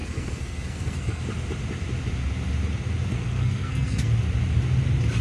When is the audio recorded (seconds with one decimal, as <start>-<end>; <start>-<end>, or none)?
1.2-3.1; 4.1-5.2